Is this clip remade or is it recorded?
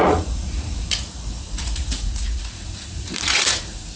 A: remade